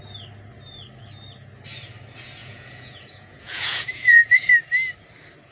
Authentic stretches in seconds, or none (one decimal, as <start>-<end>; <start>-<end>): 0.0-2.4; 4.5-5.5